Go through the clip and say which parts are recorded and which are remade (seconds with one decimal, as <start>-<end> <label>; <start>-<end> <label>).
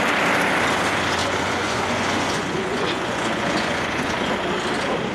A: 0.0-1.2 recorded; 1.2-4.3 remade; 4.3-5.1 recorded